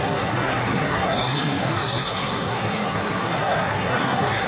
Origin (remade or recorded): remade